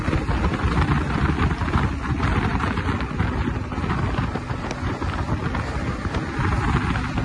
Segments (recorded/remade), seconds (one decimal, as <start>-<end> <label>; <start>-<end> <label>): 0.0-7.2 recorded